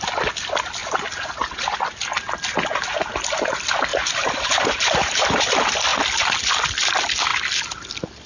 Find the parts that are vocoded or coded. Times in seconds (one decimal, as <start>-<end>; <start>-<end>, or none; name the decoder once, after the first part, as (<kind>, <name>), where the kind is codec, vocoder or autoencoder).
0.8-1.8 (vocoder, BigVGAN v2); 3.9-5.4